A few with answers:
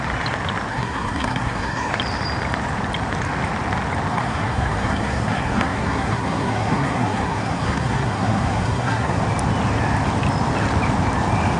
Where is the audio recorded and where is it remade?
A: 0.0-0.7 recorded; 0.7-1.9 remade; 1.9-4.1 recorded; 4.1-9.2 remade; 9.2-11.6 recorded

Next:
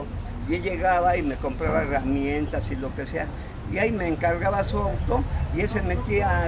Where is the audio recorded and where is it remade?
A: 0.0-6.5 recorded

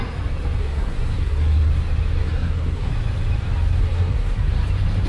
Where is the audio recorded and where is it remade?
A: 0.0-0.6 recorded; 0.6-1.7 remade; 1.7-2.2 recorded; 2.2-2.9 remade; 2.9-3.8 recorded; 3.8-4.5 remade; 4.5-5.1 recorded

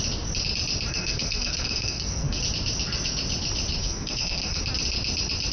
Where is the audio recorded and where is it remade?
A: 0.0-0.9 recorded; 0.9-2.4 remade; 2.4-3.8 recorded; 3.8-4.6 remade; 4.6-5.5 recorded

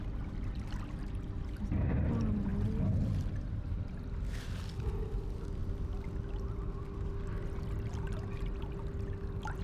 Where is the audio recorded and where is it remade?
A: 0.0-9.6 recorded

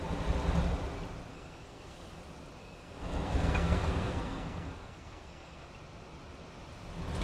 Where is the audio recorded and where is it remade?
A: 0.0-1.3 recorded; 1.3-2.2 remade; 2.2-2.6 recorded; 2.6-5.7 remade; 5.7-7.2 recorded

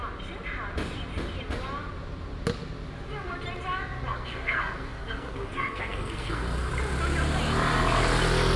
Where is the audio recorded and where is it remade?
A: 0.0-4.1 recorded; 4.1-6.7 remade; 6.7-8.6 recorded